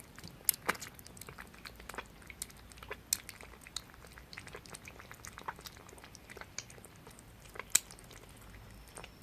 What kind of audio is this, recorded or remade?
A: recorded